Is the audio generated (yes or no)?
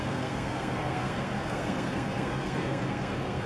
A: yes